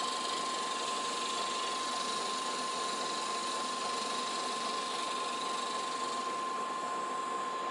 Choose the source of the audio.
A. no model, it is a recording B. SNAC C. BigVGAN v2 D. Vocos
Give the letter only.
A